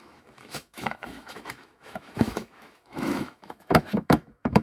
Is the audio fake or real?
fake